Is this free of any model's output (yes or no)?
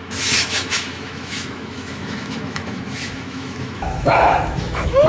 no